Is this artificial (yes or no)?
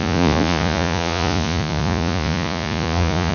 yes